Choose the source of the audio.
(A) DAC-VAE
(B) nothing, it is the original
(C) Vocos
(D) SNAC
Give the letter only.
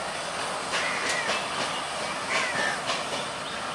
B